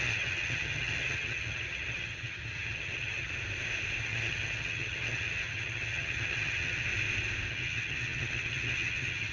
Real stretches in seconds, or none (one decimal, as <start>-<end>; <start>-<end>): 3.3-4.0; 6.9-7.5